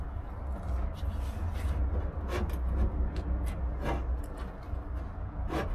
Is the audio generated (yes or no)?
no